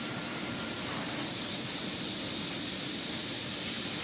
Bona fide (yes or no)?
no